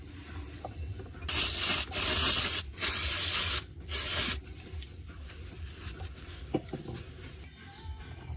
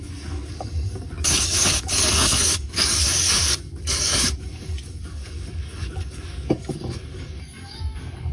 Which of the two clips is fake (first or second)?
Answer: second